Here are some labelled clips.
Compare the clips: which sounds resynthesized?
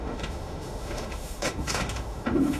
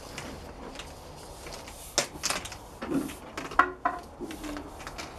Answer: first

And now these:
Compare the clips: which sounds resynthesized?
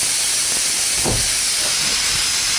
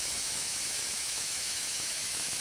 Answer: second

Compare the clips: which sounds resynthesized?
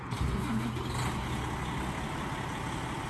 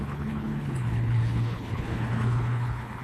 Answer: second